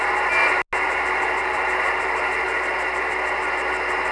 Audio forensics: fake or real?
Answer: real